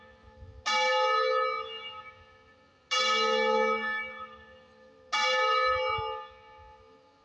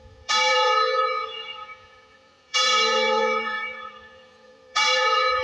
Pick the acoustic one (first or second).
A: first